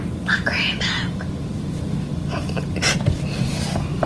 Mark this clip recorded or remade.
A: recorded